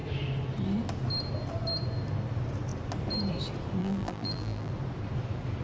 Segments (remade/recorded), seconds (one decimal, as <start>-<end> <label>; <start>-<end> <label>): 0.0-3.8 recorded; 3.8-4.7 remade; 4.7-5.6 recorded

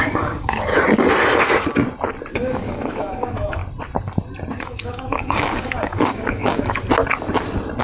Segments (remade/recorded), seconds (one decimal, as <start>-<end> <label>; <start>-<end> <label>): 0.0-0.7 remade; 0.7-2.3 recorded; 2.3-3.6 remade; 3.6-4.6 recorded; 4.6-6.8 remade; 6.8-7.8 recorded

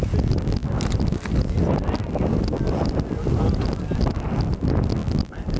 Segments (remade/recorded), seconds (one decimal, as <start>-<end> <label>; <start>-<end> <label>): 0.0-5.6 recorded

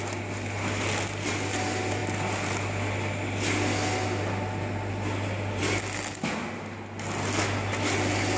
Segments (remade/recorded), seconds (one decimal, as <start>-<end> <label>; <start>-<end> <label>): 0.0-8.4 recorded

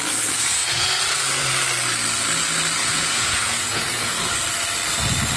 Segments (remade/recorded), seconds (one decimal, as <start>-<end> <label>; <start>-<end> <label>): 0.0-0.6 recorded; 0.6-1.5 remade; 1.5-2.8 recorded; 2.8-4.3 remade; 4.3-5.4 recorded